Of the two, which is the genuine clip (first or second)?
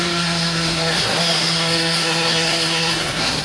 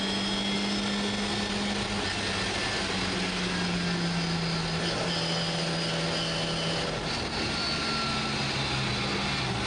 second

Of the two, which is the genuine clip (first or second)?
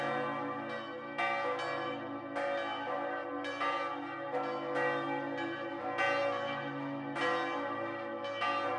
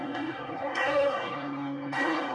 first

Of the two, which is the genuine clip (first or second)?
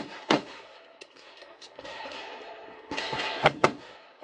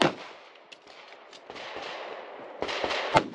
second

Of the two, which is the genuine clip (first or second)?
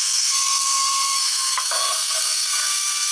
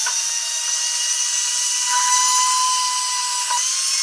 second